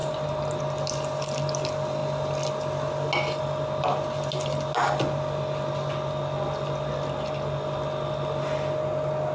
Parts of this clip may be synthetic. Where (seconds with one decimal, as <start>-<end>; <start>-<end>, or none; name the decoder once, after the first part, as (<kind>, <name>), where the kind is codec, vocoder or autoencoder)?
0.0-0.6 (vocoder, BigVGAN v2)